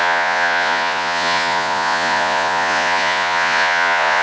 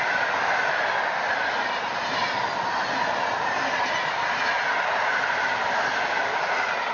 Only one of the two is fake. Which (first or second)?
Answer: first